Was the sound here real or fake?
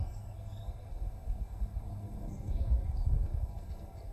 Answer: fake